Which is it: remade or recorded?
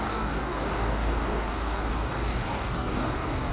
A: remade